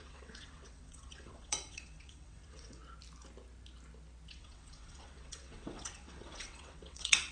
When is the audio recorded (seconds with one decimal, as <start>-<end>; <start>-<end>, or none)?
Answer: 2.8-4.3